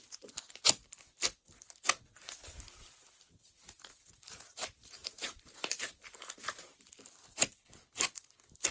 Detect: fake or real real